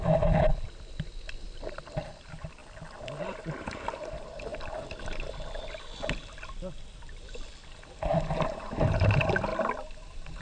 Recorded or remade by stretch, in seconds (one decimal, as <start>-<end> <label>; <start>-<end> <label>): 0.0-2.6 recorded; 2.6-3.2 remade; 3.2-10.4 recorded